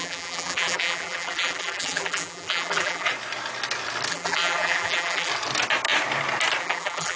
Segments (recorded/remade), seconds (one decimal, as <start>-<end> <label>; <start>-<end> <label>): 0.0-3.1 remade; 3.1-4.1 recorded; 4.1-5.3 remade; 5.3-6.6 recorded; 6.6-7.2 remade